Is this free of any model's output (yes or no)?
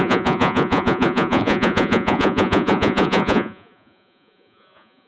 no